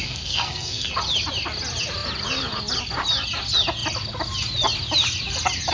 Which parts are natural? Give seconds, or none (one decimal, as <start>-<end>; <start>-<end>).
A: 0.9-5.7